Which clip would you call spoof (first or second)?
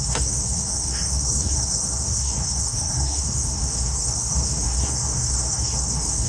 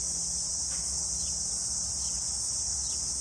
first